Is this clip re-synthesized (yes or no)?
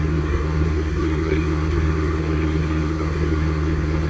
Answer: yes